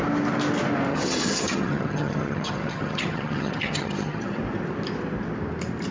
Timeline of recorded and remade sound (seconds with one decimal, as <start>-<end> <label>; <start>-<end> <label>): 0.0-0.9 recorded; 0.9-4.4 remade; 4.4-5.9 recorded